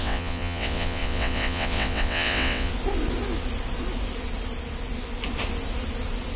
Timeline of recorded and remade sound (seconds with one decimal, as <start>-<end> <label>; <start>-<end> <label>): 0.0-2.7 remade; 2.7-6.4 recorded